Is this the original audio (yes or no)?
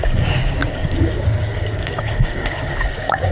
no